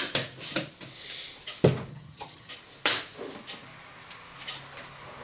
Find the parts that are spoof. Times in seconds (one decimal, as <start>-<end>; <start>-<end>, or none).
1.9-2.5